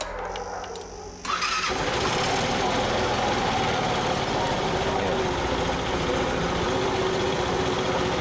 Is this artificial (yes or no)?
no